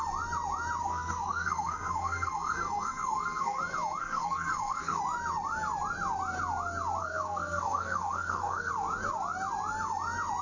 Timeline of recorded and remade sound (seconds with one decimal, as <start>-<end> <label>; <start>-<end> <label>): 0.0-0.8 recorded; 0.8-3.6 remade; 3.6-4.0 recorded; 4.0-5.0 remade; 5.0-7.0 recorded; 7.0-8.7 remade; 8.7-10.4 recorded